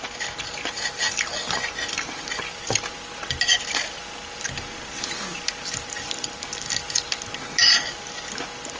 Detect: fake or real real